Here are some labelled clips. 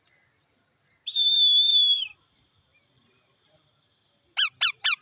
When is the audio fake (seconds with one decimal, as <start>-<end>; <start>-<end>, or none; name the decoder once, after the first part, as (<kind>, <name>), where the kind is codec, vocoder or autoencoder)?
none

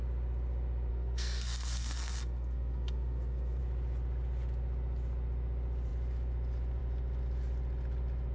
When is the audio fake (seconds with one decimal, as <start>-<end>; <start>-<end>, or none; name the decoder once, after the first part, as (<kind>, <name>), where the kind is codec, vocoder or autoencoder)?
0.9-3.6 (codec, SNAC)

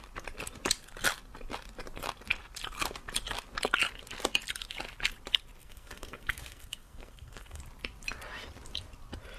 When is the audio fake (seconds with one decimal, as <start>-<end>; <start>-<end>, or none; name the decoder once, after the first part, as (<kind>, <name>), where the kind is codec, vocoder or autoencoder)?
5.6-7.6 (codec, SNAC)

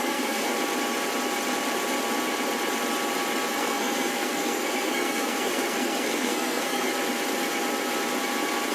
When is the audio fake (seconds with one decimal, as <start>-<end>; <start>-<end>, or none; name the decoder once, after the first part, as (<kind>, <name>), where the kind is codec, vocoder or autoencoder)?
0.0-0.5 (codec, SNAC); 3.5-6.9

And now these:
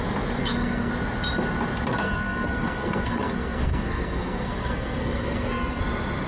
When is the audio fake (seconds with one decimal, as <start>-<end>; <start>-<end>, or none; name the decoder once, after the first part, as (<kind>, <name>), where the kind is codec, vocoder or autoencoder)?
0.4-0.9 (codec, SNAC); 2.0-5.8

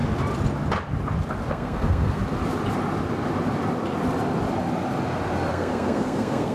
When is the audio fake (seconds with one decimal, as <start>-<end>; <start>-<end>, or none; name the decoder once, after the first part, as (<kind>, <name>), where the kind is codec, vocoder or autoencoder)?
1.5-2.2 (codec, SNAC); 5.5-6.5

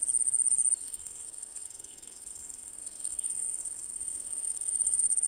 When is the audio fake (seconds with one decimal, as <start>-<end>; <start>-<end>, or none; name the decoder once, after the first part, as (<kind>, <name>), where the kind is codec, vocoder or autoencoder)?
0.8-5.3 (codec, SNAC)